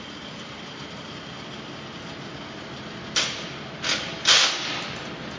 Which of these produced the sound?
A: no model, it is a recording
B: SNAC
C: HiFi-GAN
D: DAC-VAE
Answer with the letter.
A